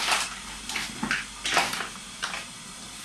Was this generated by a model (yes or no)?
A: no